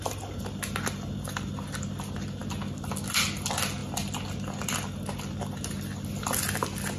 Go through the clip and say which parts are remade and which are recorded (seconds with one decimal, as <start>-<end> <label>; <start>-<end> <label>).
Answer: 0.0-7.0 recorded